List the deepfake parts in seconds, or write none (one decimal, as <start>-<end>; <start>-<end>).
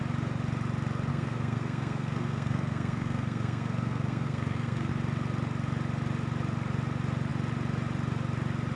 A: 1.1-4.9